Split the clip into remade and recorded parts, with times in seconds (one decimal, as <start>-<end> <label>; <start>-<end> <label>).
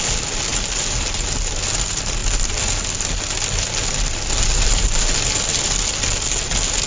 0.0-6.9 recorded